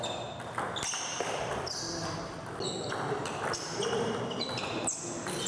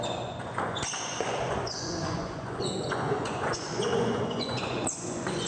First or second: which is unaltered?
first